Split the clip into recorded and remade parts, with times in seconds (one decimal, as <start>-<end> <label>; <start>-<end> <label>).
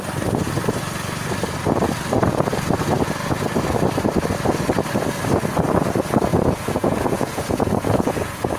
0.0-6.3 recorded; 6.3-8.6 remade